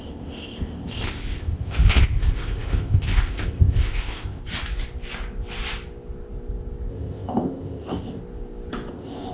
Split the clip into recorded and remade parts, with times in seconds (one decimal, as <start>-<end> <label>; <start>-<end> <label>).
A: 0.0-4.4 remade; 4.4-6.9 recorded; 6.9-8.2 remade; 8.2-8.9 recorded; 8.9-9.3 remade